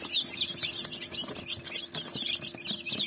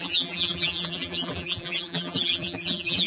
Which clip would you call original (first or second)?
first